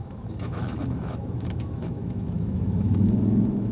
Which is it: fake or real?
fake